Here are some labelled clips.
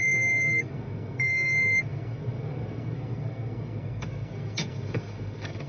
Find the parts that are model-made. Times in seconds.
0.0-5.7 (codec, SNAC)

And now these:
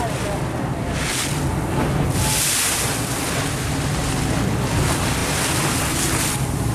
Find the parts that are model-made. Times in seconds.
none

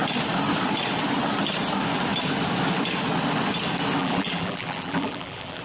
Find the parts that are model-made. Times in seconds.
4.0-5.6 (vocoder, BigVGAN v2)

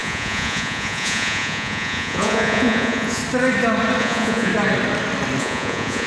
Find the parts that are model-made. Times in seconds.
0.0-3.2 (vocoder, Vocos); 4.0-4.5; 5.4-6.1

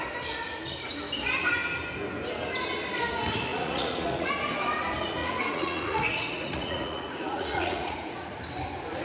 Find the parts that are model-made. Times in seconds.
3.5-4.3 (vocoder, Vocos); 5.2-8.4

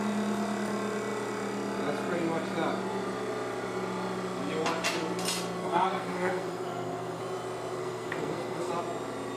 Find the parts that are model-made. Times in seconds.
5.6-7.2 (codec, SNAC); 7.8-8.7

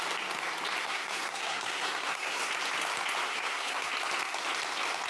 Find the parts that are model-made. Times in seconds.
0.8-2.4 (codec, SNAC); 3.3-3.9